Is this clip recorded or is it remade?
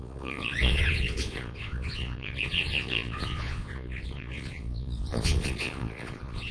remade